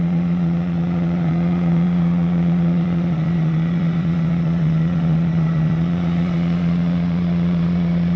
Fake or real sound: fake